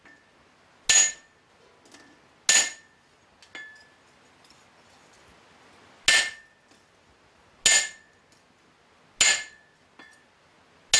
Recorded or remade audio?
recorded